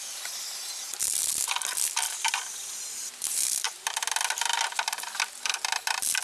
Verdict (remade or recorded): recorded